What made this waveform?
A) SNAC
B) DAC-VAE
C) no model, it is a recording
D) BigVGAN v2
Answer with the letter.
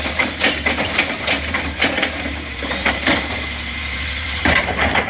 D